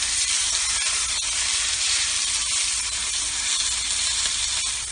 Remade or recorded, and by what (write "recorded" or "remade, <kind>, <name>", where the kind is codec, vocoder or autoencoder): recorded